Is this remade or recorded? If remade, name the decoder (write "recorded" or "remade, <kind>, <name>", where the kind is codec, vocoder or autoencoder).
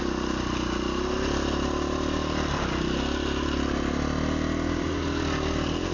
recorded